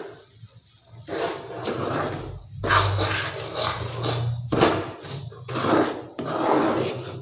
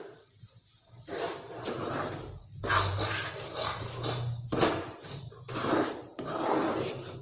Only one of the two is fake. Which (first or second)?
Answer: second